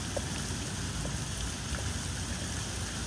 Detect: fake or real real